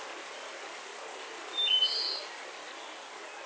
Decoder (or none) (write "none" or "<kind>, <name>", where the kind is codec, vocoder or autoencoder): none